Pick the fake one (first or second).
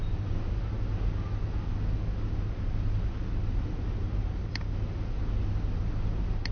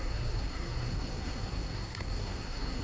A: second